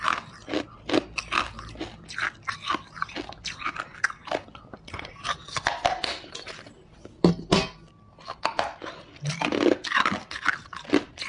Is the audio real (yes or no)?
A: yes